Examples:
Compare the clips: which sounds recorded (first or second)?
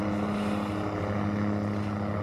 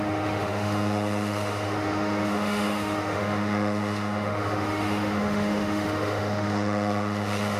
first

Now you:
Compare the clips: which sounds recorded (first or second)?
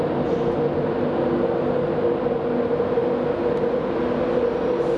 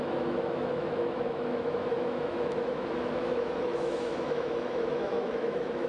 first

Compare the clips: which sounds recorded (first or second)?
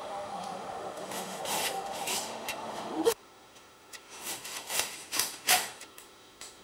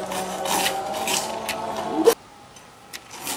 second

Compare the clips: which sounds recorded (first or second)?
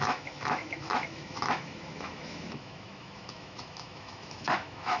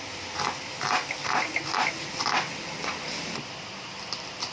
second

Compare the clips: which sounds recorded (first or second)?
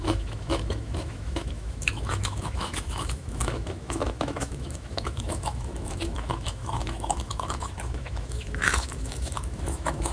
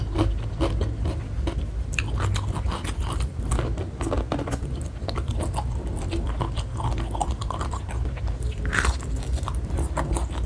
second